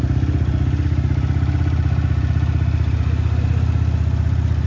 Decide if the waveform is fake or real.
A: real